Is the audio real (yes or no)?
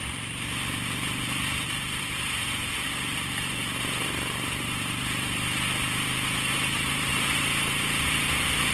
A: no